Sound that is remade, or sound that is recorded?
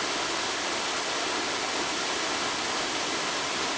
recorded